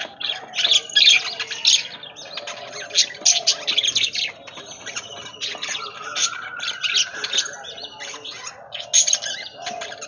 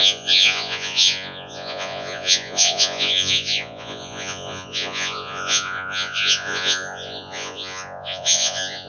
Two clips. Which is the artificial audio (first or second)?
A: second